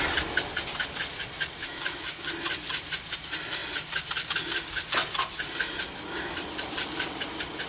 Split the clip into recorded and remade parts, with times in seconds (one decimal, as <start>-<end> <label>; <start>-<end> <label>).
0.0-7.7 recorded